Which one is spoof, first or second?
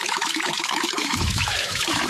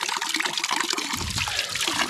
first